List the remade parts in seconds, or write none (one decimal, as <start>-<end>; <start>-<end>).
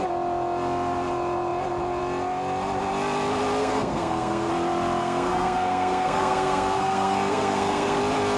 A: 3.6-4.5; 5.0-8.0